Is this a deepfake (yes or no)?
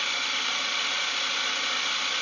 no